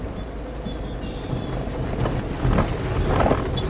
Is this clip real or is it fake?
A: real